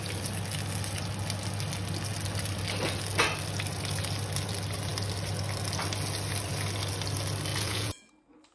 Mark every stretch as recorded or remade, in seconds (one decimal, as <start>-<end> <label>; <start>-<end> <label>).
0.0-7.5 recorded; 7.5-8.1 remade; 8.1-8.5 recorded